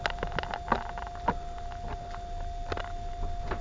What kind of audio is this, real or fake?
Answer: real